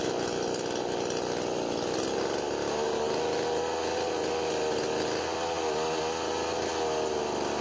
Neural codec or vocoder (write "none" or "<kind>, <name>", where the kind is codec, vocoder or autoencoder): none